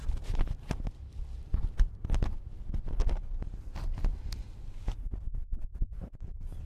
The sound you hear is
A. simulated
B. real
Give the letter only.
B